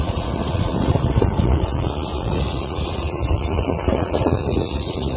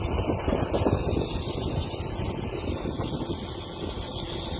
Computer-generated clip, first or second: first